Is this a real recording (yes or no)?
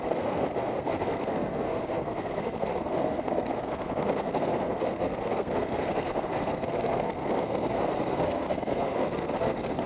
no